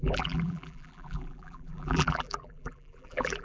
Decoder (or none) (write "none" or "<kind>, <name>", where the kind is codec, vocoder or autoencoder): vocoder, BigVGAN v2